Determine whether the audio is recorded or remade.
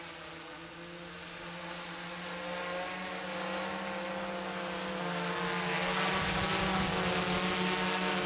recorded